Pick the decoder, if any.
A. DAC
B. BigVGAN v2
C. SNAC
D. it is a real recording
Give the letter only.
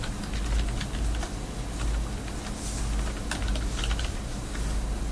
D